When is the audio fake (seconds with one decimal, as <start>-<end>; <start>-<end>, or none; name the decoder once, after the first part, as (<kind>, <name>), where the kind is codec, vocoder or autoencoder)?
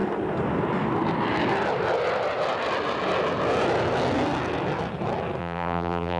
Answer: 5.4-6.2 (vocoder, BigVGAN v2)